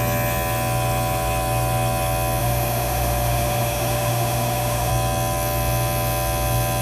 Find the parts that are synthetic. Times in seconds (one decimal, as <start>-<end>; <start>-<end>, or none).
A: 2.4-4.9